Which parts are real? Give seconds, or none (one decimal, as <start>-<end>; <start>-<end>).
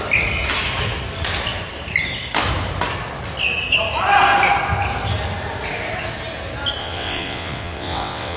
0.0-6.8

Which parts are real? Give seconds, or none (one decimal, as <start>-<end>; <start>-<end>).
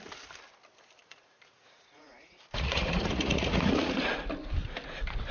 0.0-1.0; 4.2-5.3